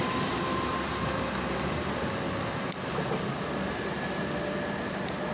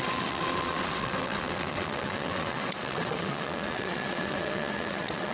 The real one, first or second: first